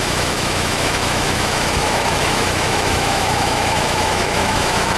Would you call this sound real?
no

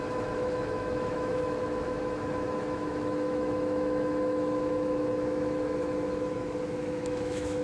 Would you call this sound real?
no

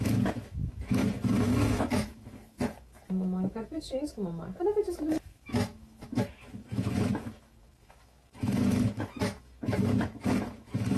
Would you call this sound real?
no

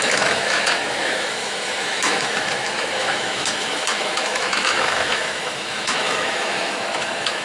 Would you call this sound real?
no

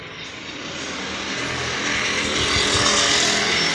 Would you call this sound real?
yes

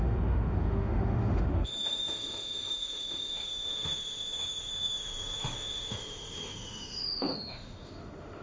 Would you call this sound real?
no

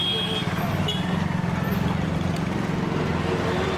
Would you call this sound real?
yes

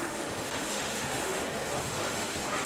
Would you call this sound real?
no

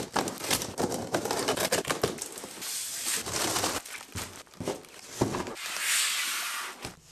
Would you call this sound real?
yes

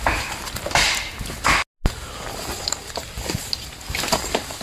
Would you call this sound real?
yes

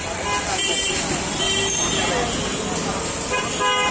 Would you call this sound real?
yes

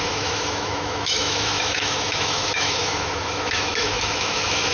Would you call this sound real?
no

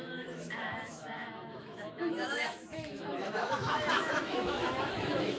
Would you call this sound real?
no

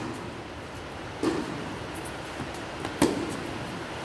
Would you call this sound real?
yes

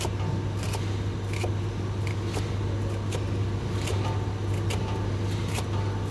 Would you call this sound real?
yes